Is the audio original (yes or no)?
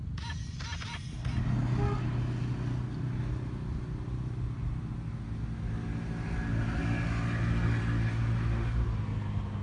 yes